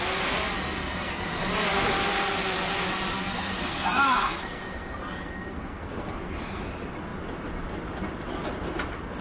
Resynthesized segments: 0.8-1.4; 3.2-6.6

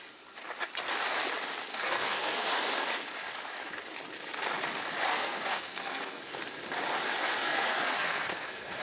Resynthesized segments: 1.7-2.5; 5.1-6.4; 7.3-8.8

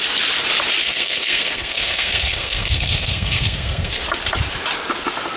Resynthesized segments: 0.8-4.0

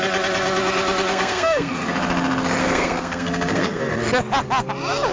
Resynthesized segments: 1.1-1.7; 2.6-3.8

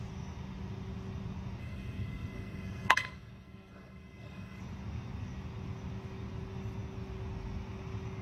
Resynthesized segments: 1.6-4.6

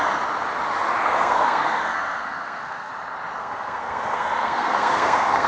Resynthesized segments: 1.0-2.9; 3.4-5.5

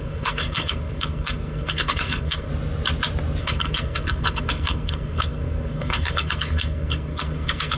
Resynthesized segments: 0.0-2.5; 3.4-7.8

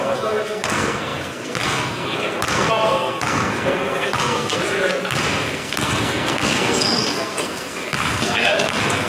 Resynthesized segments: 0.0-9.1